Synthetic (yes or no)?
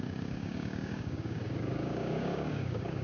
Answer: yes